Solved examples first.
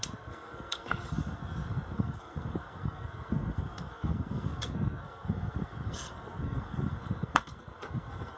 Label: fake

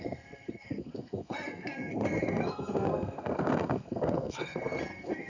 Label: fake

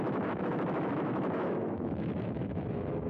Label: fake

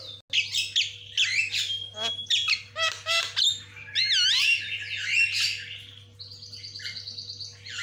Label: real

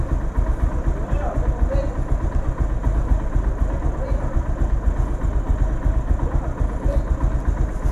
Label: real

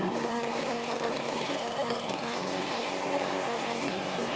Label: fake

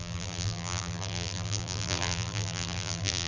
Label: fake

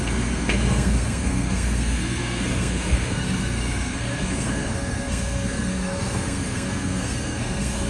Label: fake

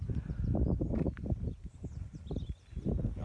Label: real